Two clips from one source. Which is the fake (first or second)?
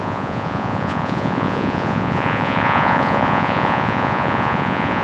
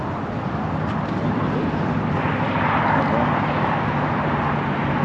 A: first